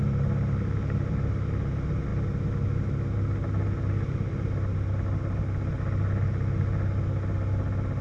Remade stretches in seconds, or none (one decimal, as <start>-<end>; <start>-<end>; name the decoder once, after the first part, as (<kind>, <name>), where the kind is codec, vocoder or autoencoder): none